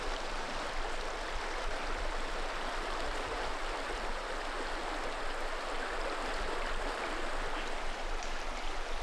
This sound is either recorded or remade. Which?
recorded